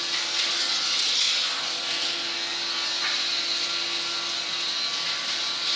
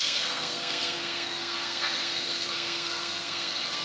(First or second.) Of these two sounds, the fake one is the second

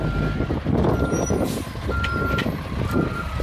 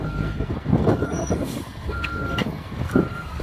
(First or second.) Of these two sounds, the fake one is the second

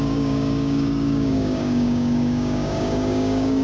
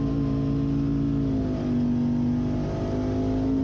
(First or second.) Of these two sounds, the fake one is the first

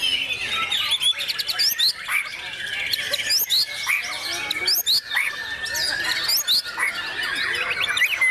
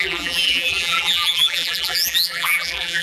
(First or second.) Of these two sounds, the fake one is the second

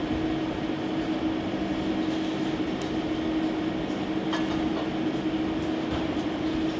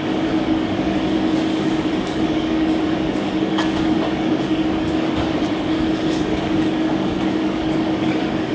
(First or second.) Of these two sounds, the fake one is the second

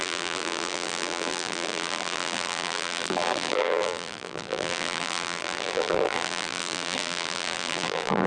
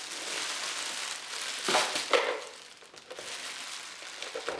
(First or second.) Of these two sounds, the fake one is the first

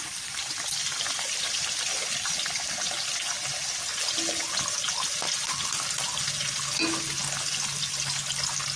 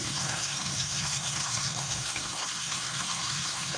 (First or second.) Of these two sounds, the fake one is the second